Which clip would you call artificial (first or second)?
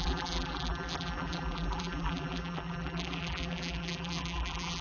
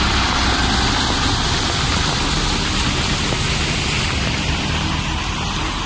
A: first